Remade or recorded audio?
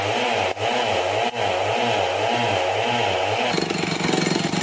recorded